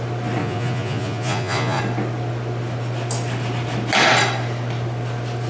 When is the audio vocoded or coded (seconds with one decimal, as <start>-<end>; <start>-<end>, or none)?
0.4-1.8